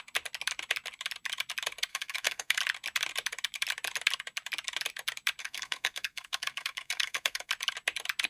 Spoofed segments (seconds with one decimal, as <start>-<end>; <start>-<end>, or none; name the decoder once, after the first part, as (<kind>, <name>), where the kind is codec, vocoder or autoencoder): 1.9-2.6 (codec, SNAC); 5.4-7.5